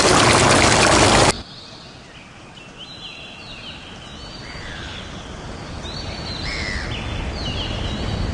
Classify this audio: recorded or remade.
recorded